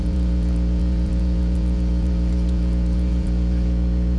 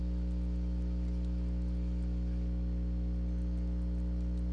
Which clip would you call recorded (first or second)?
second